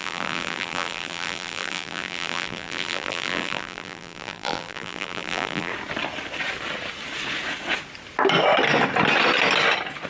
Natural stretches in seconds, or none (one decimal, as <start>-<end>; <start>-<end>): 5.7-10.1